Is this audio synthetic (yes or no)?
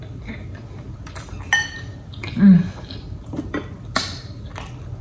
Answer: no